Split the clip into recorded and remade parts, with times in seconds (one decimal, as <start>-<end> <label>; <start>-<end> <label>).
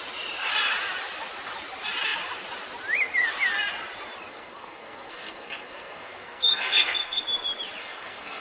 0.0-4.3 recorded; 4.3-7.2 remade; 7.2-7.8 recorded; 7.8-8.4 remade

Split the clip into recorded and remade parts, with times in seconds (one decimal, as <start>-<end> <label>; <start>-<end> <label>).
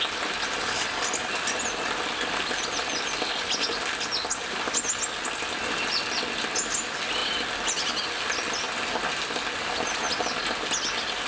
0.0-11.3 recorded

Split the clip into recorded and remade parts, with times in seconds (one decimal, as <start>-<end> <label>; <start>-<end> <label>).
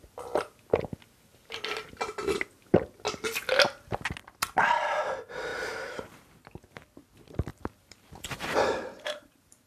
0.0-5.5 recorded; 5.5-6.4 remade; 6.4-7.5 recorded; 7.5-9.7 remade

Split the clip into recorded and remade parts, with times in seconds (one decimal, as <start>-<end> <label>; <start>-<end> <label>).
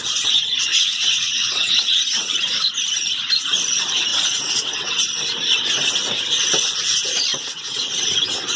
0.0-0.7 recorded; 0.7-2.0 remade; 2.0-4.1 recorded; 4.1-5.0 remade; 5.0-7.3 recorded; 7.3-7.9 remade; 7.9-8.6 recorded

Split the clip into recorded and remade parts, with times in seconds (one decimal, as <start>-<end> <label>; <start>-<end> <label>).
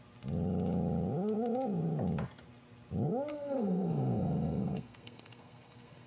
0.0-3.3 recorded; 3.3-6.1 remade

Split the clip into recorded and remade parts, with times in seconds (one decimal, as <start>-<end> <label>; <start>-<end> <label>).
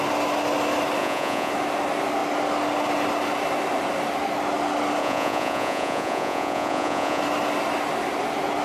0.0-1.0 recorded; 1.0-1.5 remade; 1.5-5.0 recorded; 5.0-7.2 remade; 7.2-8.6 recorded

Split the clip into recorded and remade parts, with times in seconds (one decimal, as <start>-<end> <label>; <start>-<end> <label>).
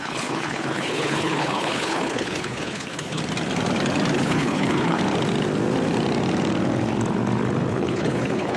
0.0-3.2 remade; 3.2-4.2 recorded; 4.2-5.0 remade; 5.0-7.7 recorded; 7.7-8.6 remade